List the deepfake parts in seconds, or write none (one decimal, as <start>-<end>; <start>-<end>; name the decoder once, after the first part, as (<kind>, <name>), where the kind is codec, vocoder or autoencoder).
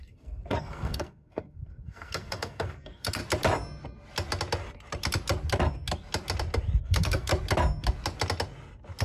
0.0-3.2 (codec, SNAC); 6.8-7.3